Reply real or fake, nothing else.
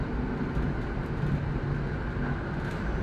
real